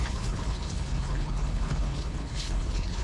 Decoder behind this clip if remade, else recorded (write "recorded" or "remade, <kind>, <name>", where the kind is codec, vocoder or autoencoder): remade, codec, HILCodec